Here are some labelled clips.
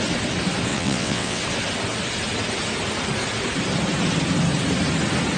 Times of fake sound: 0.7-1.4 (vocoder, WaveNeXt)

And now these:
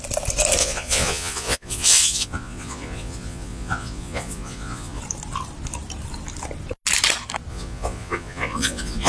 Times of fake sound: 0.6-5.0 (vocoder, Vocos); 7.5-9.1

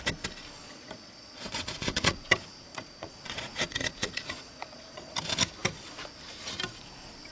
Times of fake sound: 0.6-2.3 (vocoder, Vocos); 2.7-5.1

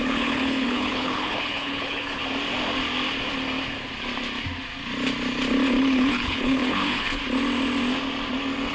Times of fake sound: 0.0-2.2 (codec, HILCodec); 5.8-7.2